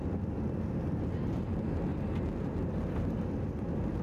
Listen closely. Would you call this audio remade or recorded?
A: recorded